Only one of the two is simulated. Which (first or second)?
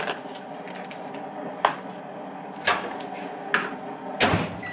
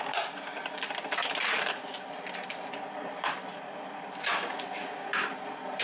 second